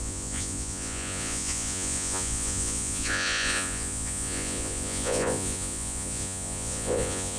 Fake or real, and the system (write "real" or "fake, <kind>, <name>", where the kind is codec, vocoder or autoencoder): fake, vocoder, Vocos